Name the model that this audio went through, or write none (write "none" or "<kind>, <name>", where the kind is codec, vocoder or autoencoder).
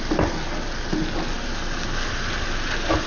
none